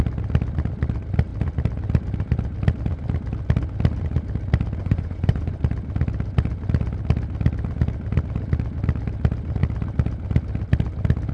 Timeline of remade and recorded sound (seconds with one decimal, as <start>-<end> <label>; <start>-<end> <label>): 0.0-4.8 recorded; 4.8-5.6 remade; 5.6-11.3 recorded